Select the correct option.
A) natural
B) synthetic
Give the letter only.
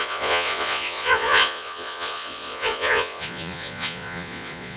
B